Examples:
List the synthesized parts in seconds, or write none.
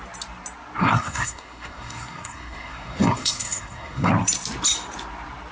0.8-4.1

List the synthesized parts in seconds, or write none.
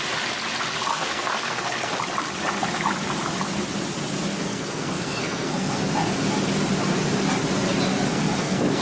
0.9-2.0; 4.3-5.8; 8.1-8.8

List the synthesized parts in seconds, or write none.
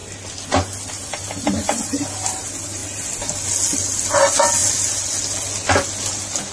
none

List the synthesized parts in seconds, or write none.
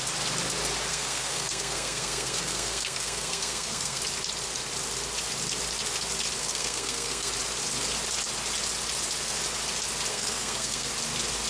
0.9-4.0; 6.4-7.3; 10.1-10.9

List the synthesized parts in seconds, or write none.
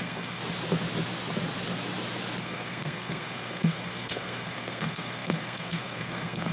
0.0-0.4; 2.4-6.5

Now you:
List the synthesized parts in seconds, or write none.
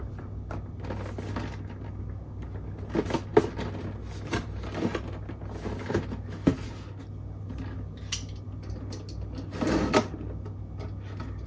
none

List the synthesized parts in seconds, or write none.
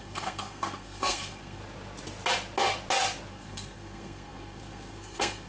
0.0-1.6; 3.3-5.5